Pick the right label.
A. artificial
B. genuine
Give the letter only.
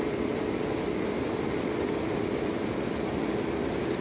B